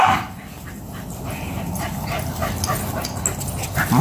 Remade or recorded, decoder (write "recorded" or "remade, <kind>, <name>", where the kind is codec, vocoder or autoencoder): recorded